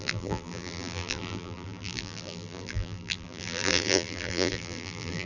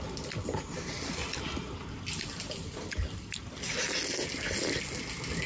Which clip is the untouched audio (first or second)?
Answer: second